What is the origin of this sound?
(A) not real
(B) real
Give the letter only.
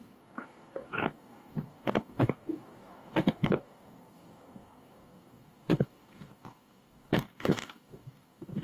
A